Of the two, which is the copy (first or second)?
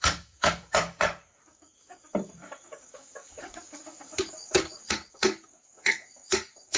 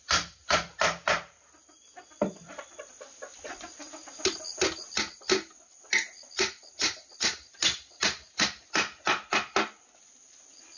first